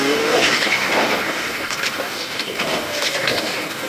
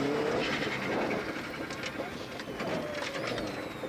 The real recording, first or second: second